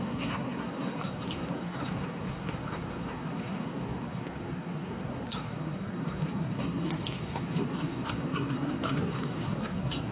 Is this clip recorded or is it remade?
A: remade